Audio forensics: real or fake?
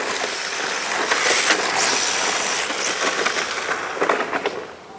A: real